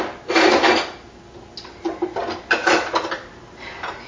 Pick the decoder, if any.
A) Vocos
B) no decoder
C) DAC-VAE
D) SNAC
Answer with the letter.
B